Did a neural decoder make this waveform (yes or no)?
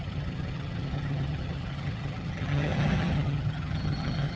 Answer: yes